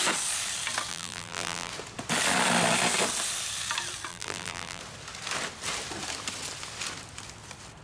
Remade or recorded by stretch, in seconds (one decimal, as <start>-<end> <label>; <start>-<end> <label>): 0.0-0.9 recorded; 0.9-1.7 remade; 1.7-4.1 recorded; 4.1-4.8 remade; 4.8-7.8 recorded